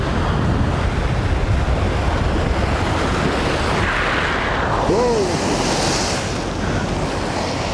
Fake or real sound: real